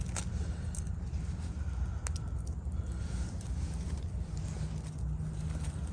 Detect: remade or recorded recorded